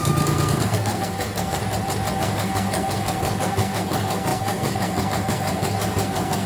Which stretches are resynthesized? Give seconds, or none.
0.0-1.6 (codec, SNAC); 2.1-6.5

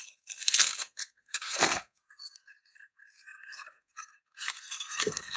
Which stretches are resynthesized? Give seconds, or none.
0.0-5.4 (codec, SNAC)

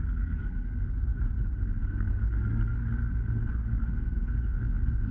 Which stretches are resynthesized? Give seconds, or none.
0.0-5.1 (codec, SNAC)